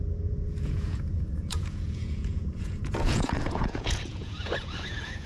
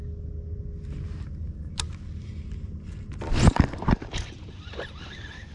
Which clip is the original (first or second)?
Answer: second